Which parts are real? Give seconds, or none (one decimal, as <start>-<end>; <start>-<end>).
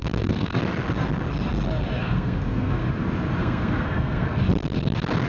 0.6-2.0; 2.9-3.4; 4.4-5.3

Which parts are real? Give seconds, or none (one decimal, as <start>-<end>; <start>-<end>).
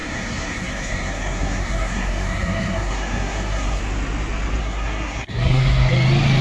3.8-4.6; 5.9-6.4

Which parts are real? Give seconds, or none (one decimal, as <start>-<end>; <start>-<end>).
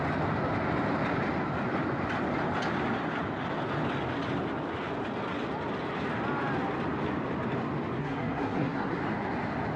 0.0-8.0; 9.0-9.8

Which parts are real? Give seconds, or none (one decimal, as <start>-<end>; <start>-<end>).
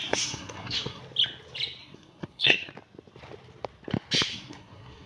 1.0-1.8; 2.7-4.3